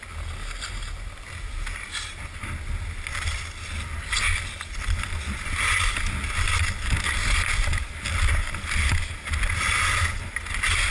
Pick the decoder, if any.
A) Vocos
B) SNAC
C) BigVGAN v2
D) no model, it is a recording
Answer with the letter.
D